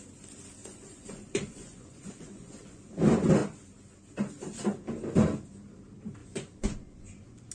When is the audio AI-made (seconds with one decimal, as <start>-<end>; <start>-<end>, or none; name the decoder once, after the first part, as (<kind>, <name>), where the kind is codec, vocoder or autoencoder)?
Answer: 0.6-2.8 (vocoder, Vocos); 6.2-7.5